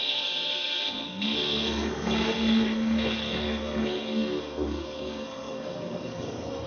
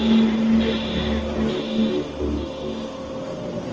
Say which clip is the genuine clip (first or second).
second